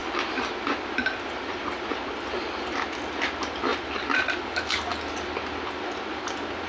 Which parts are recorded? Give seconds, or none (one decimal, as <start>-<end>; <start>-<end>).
0.0-6.7